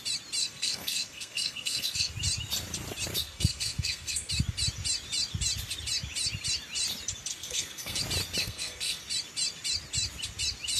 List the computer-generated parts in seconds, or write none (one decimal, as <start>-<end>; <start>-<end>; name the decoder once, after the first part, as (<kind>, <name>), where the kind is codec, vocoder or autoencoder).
0.4-2.1 (codec, SNAC); 3.2-4.3; 7.3-8.0; 8.4-9.0